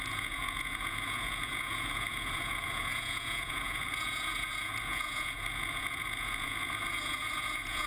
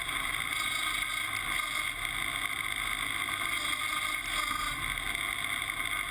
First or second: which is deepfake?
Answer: first